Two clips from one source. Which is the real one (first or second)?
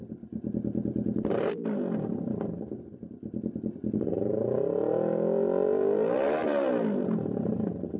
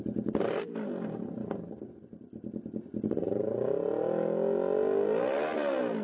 second